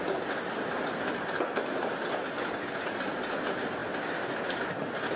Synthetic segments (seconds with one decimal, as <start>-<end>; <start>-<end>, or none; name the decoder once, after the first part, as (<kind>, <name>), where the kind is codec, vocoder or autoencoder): none